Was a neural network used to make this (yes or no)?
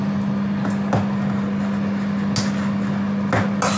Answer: no